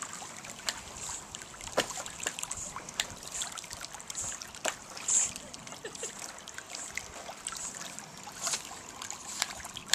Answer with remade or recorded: recorded